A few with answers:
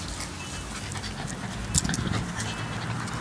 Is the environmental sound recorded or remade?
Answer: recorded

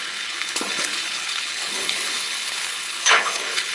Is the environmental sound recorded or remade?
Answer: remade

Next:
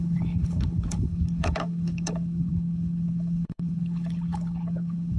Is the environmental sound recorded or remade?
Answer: remade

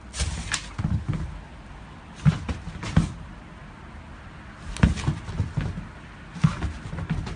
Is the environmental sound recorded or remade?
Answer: recorded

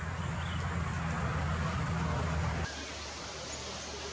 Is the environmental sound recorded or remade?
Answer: recorded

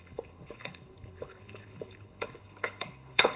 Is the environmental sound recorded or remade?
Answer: remade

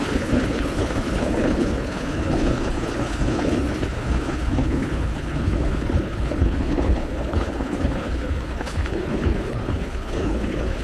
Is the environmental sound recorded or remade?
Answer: remade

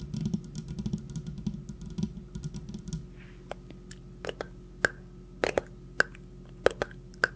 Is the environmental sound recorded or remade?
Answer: recorded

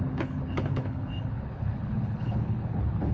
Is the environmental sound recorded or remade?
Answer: remade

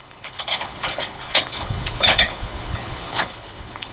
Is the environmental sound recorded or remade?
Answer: remade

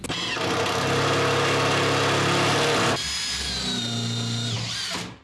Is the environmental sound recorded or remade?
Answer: recorded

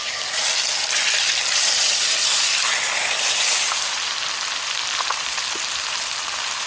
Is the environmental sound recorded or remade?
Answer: recorded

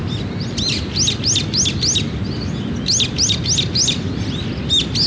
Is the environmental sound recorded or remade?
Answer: recorded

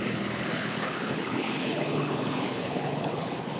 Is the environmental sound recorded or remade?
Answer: remade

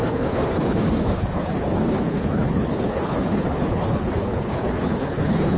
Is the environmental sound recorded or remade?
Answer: remade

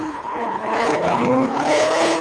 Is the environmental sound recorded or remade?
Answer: remade